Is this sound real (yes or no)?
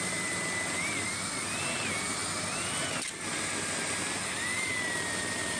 yes